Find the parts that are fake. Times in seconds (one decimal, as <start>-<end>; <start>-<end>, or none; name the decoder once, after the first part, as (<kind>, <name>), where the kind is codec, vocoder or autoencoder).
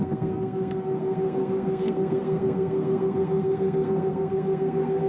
0.0-5.1 (codec, SNAC)